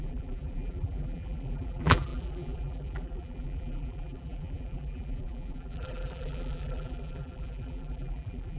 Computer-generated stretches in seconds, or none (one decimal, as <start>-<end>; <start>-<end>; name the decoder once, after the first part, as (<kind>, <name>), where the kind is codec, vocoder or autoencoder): 0.0-8.6 (vocoder, BigVGAN v2)